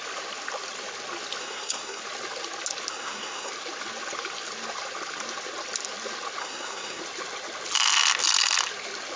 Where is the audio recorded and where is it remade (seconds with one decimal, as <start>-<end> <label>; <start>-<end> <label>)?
0.0-1.4 recorded; 1.4-2.0 remade; 2.0-2.9 recorded; 2.9-3.5 remade; 3.5-6.4 recorded; 6.4-7.0 remade; 7.0-9.2 recorded